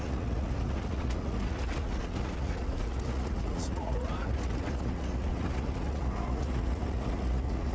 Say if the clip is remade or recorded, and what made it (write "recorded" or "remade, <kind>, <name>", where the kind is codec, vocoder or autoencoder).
remade, vocoder, Vocos